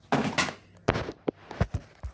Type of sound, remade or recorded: recorded